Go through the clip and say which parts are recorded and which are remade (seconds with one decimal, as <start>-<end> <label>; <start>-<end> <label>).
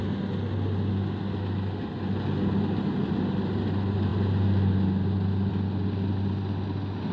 0.0-7.1 recorded